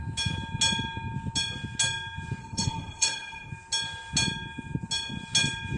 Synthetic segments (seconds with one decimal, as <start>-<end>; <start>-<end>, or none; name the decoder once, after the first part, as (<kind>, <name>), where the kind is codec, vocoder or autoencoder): 2.4-3.5 (codec, SNAC)